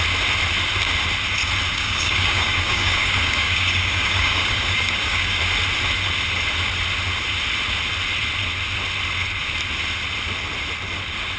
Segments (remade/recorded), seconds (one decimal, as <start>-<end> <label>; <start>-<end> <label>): 0.0-1.7 recorded; 1.7-5.4 remade; 5.4-11.4 recorded